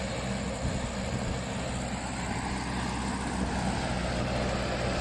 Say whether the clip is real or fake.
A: real